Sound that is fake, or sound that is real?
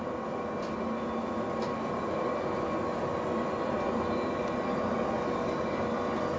real